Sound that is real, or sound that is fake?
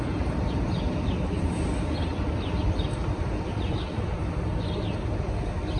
real